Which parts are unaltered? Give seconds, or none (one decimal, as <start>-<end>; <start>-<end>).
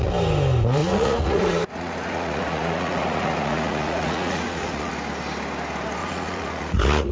0.0-0.8; 4.9-6.0